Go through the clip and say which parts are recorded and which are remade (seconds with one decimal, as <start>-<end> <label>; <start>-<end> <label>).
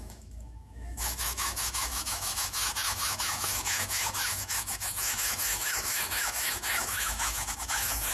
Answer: 0.0-8.1 remade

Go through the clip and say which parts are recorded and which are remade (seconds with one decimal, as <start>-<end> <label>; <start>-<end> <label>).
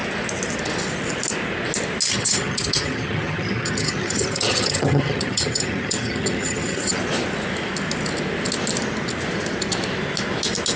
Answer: 0.0-2.1 recorded; 2.1-6.9 remade; 6.9-10.8 recorded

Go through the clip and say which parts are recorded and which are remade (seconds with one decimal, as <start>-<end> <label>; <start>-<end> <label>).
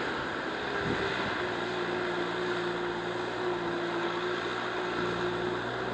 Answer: 0.0-5.9 recorded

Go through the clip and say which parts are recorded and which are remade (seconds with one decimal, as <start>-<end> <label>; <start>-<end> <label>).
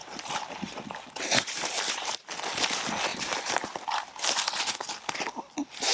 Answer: 0.0-2.3 remade; 2.3-3.1 recorded; 3.1-4.1 remade; 4.1-5.9 recorded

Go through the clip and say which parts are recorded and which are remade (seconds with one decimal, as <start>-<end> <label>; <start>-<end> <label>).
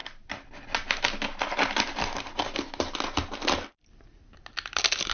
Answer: 0.0-5.1 recorded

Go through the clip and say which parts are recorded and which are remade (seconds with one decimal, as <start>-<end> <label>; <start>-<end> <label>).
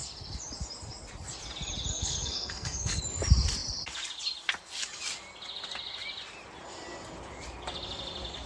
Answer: 0.0-1.9 recorded; 1.9-3.0 remade; 3.0-8.5 recorded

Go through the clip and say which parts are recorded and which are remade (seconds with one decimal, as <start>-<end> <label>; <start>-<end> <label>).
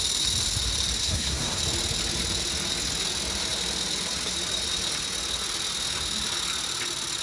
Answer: 0.0-1.0 recorded; 1.0-1.6 remade; 1.6-7.2 recorded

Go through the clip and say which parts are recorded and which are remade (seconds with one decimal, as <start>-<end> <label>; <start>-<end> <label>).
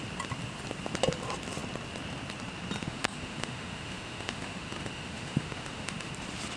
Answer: 0.0-2.8 recorded; 2.8-6.1 remade; 6.1-6.6 recorded